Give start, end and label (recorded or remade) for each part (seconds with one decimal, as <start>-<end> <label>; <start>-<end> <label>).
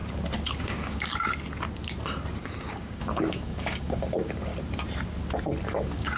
0.0-0.6 recorded; 0.6-1.1 remade; 1.1-2.7 recorded; 2.7-4.5 remade; 4.5-5.8 recorded; 5.8-6.2 remade